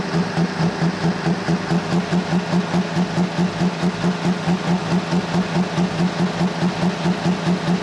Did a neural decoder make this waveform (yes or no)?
no